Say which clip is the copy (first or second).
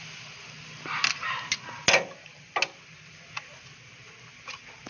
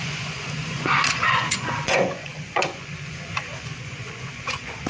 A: second